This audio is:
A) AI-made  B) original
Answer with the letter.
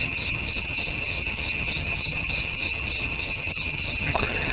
A